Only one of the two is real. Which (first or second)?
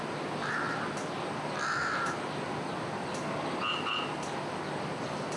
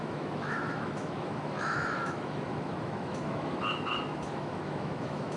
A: first